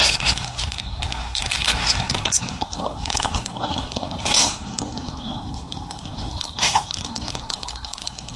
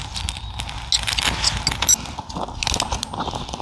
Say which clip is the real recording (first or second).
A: second